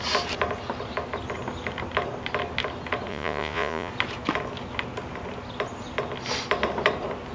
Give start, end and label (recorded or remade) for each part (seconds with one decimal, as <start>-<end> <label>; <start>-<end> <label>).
0.0-3.1 recorded; 3.1-3.9 remade; 3.9-7.3 recorded